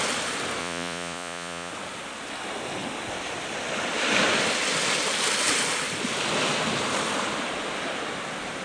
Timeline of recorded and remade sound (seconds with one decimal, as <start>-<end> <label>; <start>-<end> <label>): 0.0-0.6 recorded; 0.6-1.7 remade; 1.7-8.6 recorded